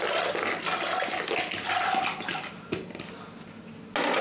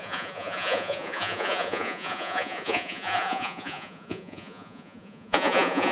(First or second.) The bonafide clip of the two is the first